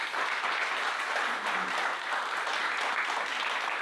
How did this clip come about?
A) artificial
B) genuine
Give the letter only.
B